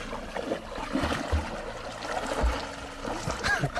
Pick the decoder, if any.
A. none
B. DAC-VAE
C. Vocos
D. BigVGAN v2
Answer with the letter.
A